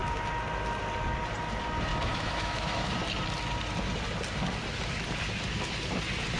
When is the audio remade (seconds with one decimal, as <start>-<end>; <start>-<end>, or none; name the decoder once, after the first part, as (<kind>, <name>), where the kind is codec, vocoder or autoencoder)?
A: 1.9-2.9 (autoencoder, DAC-VAE)